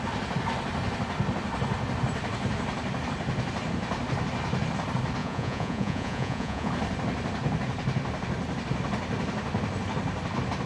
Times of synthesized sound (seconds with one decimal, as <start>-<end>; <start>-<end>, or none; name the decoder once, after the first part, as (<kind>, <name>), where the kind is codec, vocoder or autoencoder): 5.2-6.7 (vocoder, Vocos)